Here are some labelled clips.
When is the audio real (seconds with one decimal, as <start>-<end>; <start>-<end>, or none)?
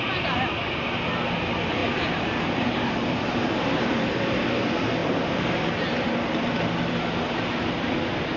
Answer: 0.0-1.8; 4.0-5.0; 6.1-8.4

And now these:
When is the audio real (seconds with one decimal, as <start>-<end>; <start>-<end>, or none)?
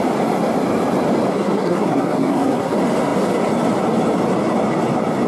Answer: 0.0-1.3; 2.7-5.3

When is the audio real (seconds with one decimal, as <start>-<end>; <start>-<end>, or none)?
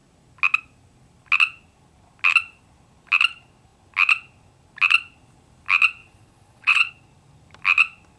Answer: 0.0-6.0; 6.9-8.2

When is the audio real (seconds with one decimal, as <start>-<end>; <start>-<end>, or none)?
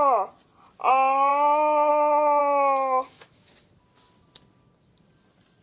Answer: 0.0-2.4; 3.5-5.6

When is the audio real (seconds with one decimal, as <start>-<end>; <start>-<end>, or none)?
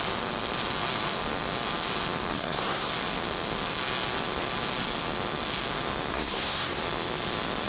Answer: 0.0-2.3; 2.9-6.1; 6.8-7.7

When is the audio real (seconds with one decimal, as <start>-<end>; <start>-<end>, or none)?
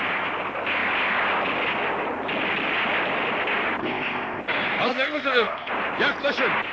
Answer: 0.0-3.8; 4.4-4.9; 5.7-6.7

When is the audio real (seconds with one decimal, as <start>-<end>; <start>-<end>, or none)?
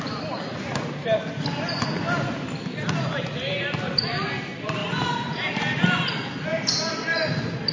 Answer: 0.0-7.7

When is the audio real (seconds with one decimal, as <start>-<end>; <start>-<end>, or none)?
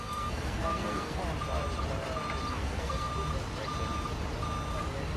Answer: 1.2-2.5; 3.1-5.2